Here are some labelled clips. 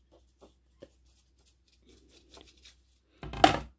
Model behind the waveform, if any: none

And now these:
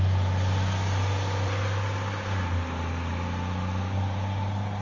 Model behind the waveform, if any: none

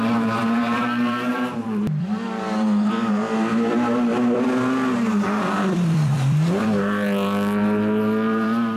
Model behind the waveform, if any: vocoder, BigVGAN v2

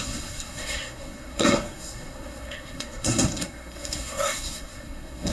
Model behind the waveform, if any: codec, SNAC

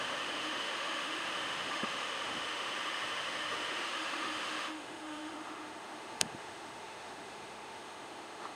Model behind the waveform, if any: autoencoder, DAC-VAE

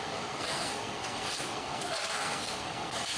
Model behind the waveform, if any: codec, SNAC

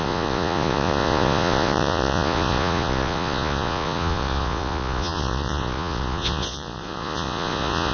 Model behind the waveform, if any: vocoder, Vocos